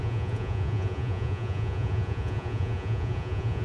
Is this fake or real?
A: fake